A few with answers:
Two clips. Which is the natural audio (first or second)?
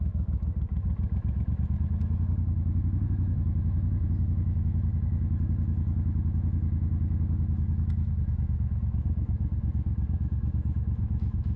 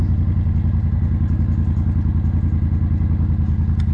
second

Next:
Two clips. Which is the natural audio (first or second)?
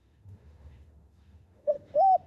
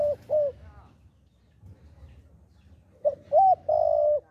second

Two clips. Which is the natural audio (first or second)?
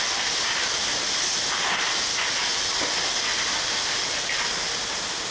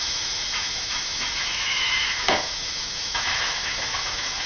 first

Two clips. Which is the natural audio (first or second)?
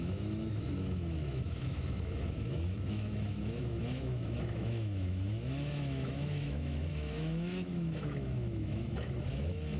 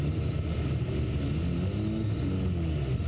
second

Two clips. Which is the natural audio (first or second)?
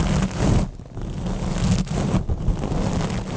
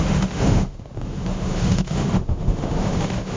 first